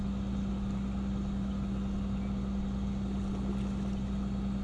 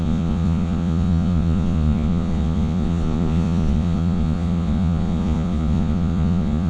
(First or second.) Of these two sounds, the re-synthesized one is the second